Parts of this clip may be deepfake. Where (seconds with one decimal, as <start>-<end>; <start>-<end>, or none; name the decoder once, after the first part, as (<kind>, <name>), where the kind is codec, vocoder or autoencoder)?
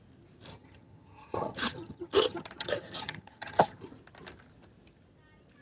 0.5-3.9 (vocoder, HiFi-GAN)